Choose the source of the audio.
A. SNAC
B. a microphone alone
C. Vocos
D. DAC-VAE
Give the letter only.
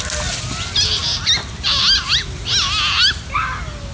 B